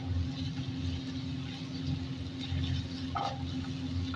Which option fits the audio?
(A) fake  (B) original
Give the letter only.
B